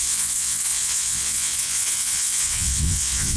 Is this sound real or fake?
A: fake